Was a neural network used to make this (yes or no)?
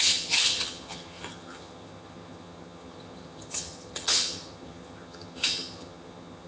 yes